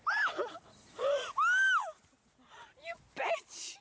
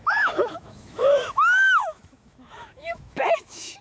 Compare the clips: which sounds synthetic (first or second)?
second